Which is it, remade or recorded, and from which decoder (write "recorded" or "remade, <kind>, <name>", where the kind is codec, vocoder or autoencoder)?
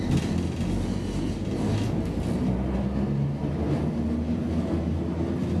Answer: recorded